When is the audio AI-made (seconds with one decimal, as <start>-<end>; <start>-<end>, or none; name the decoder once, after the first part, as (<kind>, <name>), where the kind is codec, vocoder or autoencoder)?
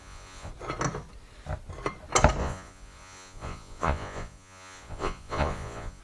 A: 0.0-0.5 (vocoder, Vocos); 2.4-6.0